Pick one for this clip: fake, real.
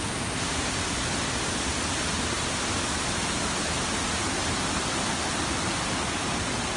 real